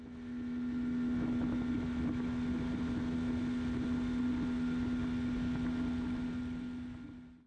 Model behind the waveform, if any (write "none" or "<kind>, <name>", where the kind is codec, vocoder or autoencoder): none